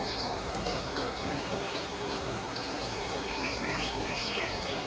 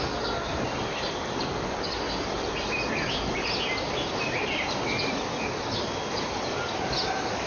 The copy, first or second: first